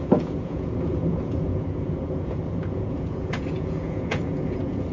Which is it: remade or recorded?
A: remade